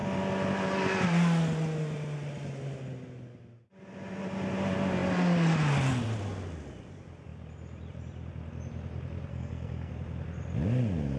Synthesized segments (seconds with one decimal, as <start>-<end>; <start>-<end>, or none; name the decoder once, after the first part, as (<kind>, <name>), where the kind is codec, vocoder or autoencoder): 9.3-9.9 (codec, SNAC)

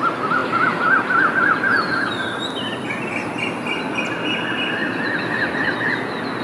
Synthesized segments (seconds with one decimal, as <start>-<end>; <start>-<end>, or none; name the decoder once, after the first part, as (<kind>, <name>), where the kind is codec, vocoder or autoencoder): 0.4-1.3 (vocoder, BigVGAN v2)

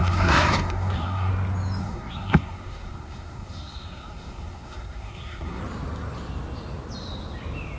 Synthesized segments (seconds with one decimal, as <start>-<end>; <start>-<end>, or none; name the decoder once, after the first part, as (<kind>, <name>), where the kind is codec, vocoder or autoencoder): 0.0-1.3 (codec, SNAC); 1.8-5.6

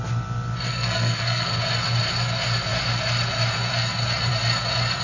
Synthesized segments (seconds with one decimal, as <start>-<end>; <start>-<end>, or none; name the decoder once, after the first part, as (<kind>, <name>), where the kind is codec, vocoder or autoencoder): 0.7-1.6 (codec, SNAC)